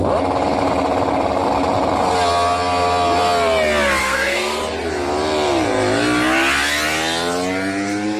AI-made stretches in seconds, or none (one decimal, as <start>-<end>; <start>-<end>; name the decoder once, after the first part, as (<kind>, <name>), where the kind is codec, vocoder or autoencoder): 4.0-4.6 (codec, SNAC)

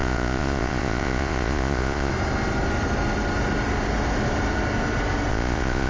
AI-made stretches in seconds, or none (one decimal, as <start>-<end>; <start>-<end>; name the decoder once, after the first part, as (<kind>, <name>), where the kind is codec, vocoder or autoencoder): 0.0-2.1 (vocoder, Vocos); 5.3-5.9

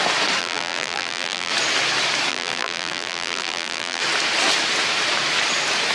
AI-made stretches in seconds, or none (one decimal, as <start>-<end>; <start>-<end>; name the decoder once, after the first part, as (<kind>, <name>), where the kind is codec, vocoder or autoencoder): 0.4-1.5 (vocoder, BigVGAN v2); 2.3-4.0

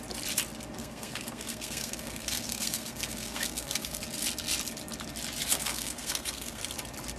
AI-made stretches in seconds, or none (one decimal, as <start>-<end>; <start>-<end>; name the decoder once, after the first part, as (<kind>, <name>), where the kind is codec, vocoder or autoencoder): 0.8-4.0 (codec, SNAC); 5.5-6.6

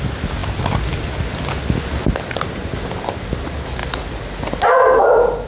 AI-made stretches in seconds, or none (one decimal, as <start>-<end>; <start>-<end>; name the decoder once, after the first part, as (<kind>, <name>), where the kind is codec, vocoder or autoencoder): none

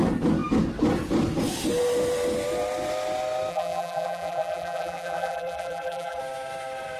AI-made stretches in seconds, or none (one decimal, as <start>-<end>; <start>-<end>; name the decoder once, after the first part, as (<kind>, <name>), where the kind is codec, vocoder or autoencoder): 3.5-6.2 (vocoder, BigVGAN v2)

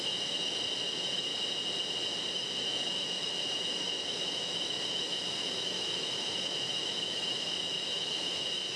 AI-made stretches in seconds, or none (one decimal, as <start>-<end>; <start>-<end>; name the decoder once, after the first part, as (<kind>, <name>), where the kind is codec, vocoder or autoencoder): 0.0-1.3 (autoencoder, DAC-VAE); 2.3-8.8